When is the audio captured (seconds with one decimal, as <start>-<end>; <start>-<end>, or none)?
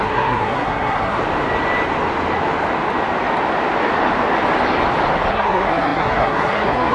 1.2-5.3